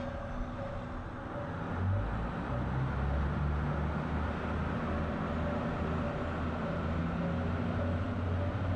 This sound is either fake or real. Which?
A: real